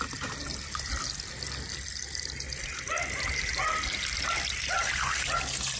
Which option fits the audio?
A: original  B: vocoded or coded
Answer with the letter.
A